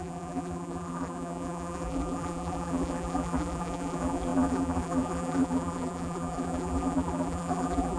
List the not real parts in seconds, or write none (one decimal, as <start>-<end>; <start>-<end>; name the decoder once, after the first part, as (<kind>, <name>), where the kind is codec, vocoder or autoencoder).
0.0-8.0 (vocoder, BigVGAN v2)